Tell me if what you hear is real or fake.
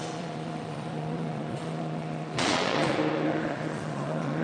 fake